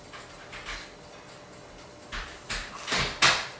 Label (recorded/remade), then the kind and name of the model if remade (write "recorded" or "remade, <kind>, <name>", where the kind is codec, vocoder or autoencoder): recorded